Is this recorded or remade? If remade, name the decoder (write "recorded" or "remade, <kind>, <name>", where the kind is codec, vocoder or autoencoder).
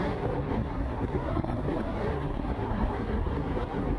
remade, codec, SNAC